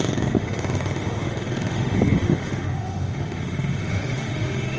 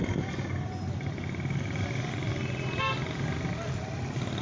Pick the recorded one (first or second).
second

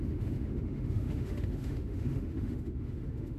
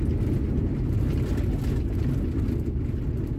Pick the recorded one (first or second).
second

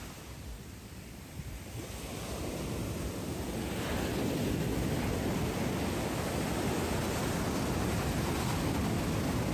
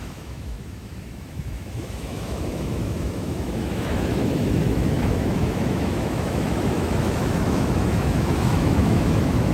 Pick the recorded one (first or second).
first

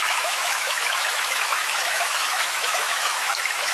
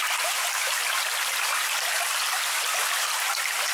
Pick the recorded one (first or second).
second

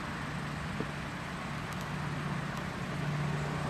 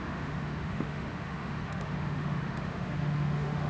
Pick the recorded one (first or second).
first